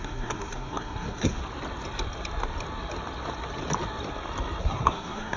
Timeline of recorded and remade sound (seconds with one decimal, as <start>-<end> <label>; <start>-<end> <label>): 0.0-1.4 remade; 1.4-4.6 recorded; 4.6-5.4 remade